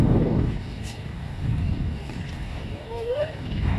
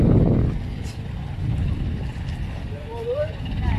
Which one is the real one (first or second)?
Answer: second